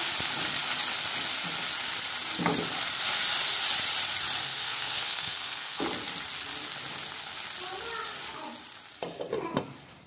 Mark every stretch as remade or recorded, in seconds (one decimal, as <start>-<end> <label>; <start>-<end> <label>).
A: 0.0-4.4 recorded; 4.4-5.8 remade; 5.8-10.1 recorded